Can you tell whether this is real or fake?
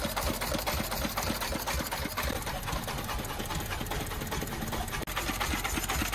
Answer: fake